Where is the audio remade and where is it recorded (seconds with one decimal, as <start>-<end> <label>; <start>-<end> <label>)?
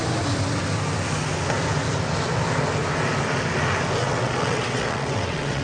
0.0-4.0 recorded; 4.0-5.6 remade